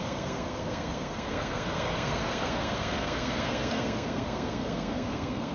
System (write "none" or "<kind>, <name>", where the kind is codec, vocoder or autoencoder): codec, SNAC